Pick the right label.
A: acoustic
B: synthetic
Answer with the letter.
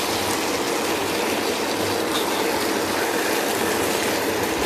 A